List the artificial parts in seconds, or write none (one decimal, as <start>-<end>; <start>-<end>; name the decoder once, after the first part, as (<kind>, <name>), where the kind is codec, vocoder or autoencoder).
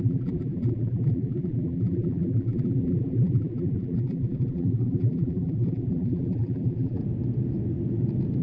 0.0-7.0 (vocoder, BigVGAN v2)